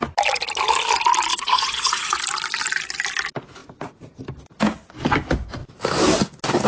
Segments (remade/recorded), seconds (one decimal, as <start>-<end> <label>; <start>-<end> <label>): 0.0-1.3 recorded; 1.3-2.2 remade; 2.2-6.7 recorded